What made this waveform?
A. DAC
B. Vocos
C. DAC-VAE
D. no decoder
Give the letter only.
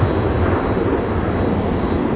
D